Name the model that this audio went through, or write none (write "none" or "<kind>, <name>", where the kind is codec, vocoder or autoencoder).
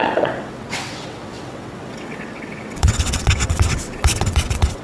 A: vocoder, WaveNeXt